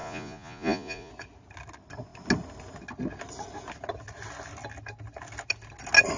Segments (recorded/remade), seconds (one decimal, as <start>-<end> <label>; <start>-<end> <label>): 0.0-1.1 remade; 1.1-6.2 recorded